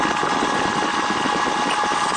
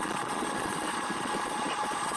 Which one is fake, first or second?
second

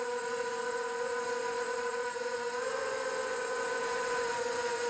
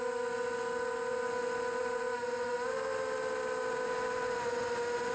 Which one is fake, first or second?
first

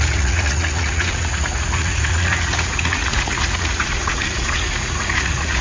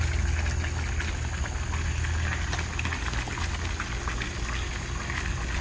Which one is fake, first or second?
first